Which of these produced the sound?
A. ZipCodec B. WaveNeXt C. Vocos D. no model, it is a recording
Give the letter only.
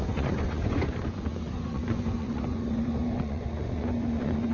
C